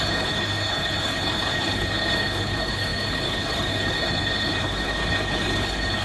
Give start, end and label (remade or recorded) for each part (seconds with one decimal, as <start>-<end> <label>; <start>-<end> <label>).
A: 0.0-6.0 remade